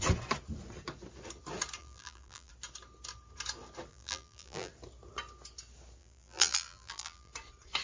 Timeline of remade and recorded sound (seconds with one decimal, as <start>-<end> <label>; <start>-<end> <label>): 0.0-1.8 recorded; 1.8-2.5 remade; 2.5-3.9 recorded; 3.9-4.7 remade; 4.7-6.0 recorded; 6.0-7.3 remade; 7.3-7.8 recorded